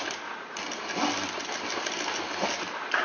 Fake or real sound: real